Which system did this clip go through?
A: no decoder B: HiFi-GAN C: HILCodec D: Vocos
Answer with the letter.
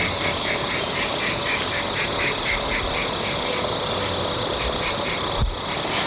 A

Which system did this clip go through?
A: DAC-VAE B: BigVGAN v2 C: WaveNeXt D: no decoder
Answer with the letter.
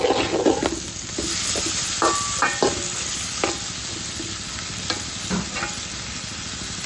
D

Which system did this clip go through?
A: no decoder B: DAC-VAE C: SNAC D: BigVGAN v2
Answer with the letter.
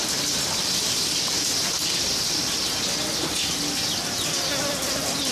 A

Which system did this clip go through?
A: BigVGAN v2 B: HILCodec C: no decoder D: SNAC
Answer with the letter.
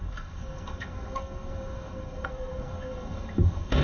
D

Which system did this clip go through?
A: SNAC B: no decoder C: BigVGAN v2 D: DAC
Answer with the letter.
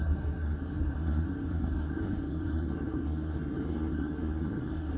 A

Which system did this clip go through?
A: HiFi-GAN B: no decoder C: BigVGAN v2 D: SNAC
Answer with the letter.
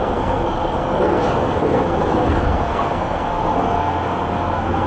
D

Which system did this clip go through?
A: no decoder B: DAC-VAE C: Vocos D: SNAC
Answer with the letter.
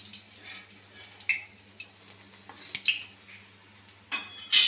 A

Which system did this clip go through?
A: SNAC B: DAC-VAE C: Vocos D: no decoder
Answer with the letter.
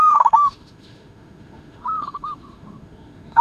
B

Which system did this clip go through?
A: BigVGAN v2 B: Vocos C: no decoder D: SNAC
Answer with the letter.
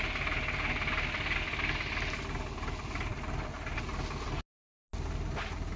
C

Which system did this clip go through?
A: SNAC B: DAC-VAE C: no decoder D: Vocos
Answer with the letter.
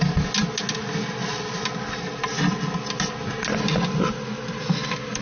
C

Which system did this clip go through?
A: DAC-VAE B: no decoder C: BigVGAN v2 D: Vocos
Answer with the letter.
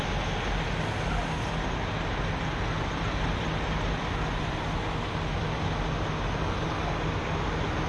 B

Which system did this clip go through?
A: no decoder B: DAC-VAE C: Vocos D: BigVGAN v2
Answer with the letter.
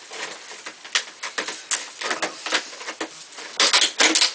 A